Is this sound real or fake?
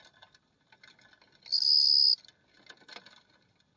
real